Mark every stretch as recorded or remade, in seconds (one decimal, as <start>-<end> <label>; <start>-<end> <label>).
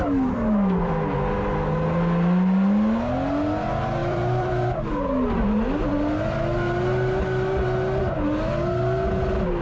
0.0-4.0 recorded; 4.0-4.9 remade; 4.9-9.6 recorded